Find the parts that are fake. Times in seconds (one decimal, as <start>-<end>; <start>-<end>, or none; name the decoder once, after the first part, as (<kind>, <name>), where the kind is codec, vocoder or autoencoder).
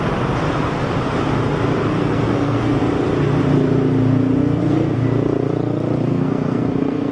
1.9-2.8 (codec, SNAC); 4.4-5.0; 6.1-7.1